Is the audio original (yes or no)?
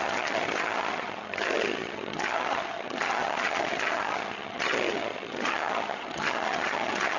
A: no